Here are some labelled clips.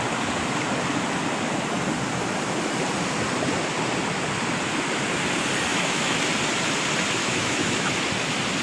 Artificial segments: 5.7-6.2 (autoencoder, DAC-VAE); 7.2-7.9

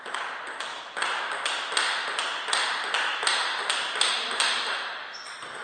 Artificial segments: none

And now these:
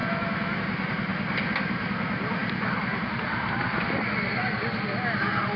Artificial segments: 0.0-0.6 (autoencoder, DAC-VAE)